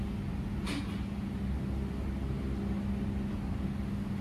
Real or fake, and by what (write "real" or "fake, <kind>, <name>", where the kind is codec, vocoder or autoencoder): real